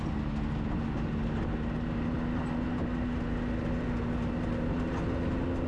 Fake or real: real